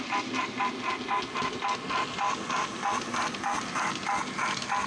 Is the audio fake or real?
real